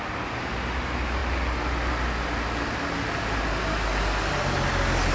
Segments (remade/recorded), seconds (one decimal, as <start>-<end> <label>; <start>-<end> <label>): 0.0-5.1 recorded